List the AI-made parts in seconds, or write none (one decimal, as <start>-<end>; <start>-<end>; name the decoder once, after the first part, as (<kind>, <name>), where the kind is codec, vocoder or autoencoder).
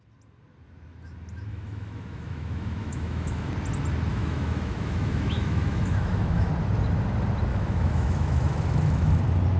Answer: 1.5-3.5 (autoencoder, DAC-VAE); 4.1-6.5; 7.5-9.2